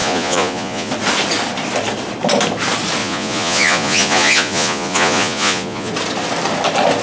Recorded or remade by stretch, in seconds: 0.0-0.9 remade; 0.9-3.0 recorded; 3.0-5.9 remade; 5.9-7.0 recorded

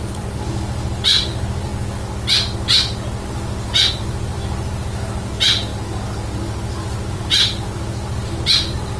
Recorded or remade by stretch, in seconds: 0.0-1.7 remade; 1.7-3.9 recorded; 3.9-9.0 remade

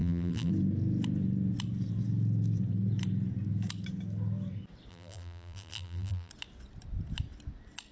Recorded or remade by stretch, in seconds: 0.0-0.5 remade; 0.5-4.9 recorded; 4.9-6.3 remade; 6.3-7.9 recorded

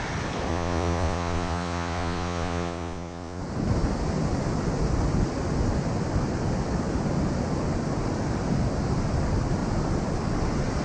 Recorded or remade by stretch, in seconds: 0.0-0.5 recorded; 0.5-3.4 remade; 3.4-10.8 recorded

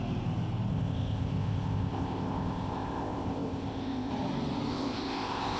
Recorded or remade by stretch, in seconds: 0.0-0.7 recorded; 0.7-4.1 remade; 4.1-4.7 recorded; 4.7-5.6 remade

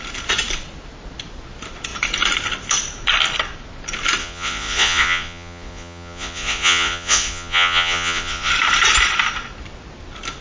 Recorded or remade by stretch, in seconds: 0.0-4.2 recorded; 4.2-8.5 remade; 8.5-10.4 recorded

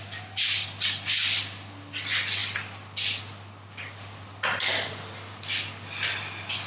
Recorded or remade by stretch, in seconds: 0.0-6.7 recorded